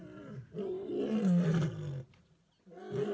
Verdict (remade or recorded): recorded